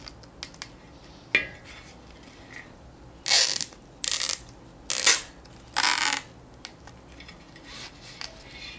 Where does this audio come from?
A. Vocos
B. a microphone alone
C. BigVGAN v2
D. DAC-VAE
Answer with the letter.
B